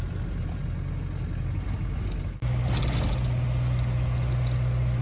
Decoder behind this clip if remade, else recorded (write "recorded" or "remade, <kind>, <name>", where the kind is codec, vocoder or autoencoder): recorded